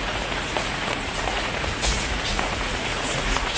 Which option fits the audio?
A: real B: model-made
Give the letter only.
B